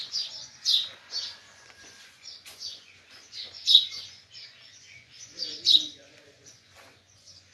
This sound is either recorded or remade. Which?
remade